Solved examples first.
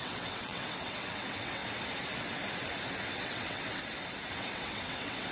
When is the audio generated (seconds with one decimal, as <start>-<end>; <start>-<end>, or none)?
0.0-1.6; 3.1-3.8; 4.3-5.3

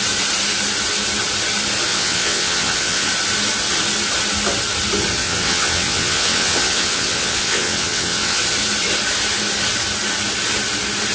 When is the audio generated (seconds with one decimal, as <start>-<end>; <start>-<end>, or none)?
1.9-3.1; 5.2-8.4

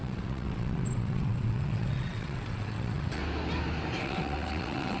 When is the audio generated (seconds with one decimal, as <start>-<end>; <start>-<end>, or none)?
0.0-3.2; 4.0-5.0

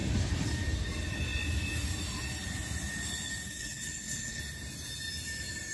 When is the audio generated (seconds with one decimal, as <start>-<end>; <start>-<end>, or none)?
3.6-4.4

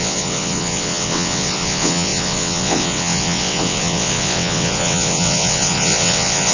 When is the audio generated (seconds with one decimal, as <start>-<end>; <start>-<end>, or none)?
0.0-6.5

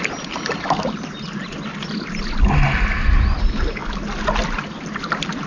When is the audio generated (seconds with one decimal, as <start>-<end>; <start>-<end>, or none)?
none

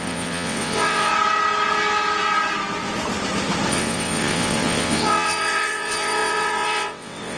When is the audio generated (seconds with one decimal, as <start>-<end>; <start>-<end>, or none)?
0.0-1.1; 3.7-7.4

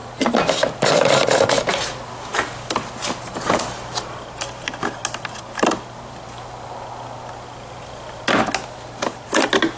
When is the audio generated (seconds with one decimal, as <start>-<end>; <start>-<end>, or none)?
none